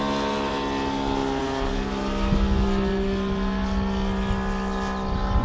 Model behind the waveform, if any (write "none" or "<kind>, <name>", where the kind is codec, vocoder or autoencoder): none